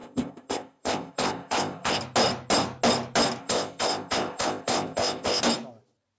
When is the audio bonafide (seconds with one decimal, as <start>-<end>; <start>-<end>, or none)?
2.0-3.4; 5.4-6.2